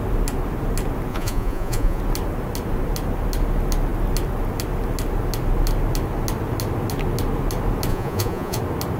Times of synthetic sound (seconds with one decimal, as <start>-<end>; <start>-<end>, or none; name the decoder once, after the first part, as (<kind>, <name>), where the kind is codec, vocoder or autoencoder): 1.1-2.0 (vocoder, Vocos); 7.9-8.6